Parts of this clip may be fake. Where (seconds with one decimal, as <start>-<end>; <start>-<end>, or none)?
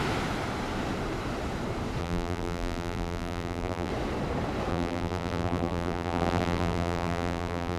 2.0-3.9; 4.7-7.8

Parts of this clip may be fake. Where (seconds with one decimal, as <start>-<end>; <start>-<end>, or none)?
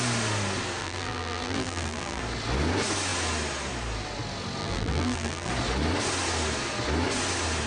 0.8-2.2; 4.6-5.5